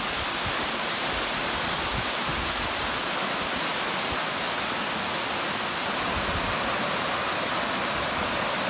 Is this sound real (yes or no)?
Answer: yes